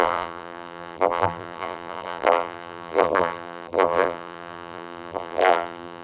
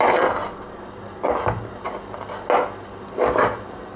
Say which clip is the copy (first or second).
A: first